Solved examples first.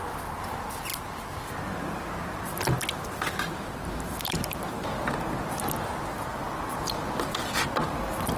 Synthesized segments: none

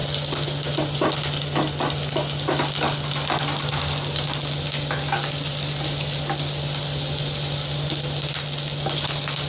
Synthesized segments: none

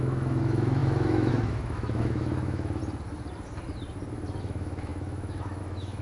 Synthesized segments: 0.0-2.8; 4.4-6.0

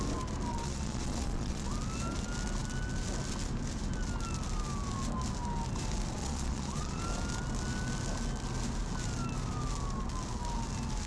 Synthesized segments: 0.5-1.7; 6.2-7.0